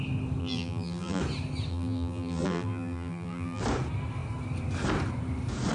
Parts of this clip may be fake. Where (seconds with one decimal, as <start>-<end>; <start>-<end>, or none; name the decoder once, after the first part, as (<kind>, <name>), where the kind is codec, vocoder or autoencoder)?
0.4-1.2 (vocoder, BigVGAN v2); 1.7-3.6